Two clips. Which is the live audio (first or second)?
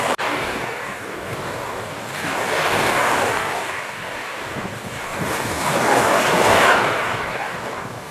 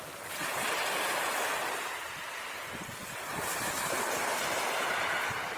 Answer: second